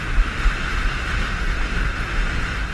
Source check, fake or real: real